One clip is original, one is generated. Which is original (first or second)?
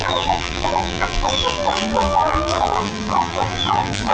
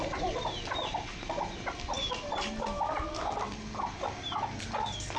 second